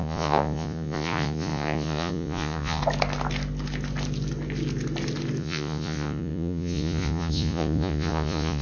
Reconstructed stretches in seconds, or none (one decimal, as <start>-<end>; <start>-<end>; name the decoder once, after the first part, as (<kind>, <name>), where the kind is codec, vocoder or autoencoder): 0.0-2.8 (vocoder, Vocos); 5.4-8.6